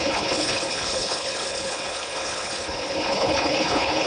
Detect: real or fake fake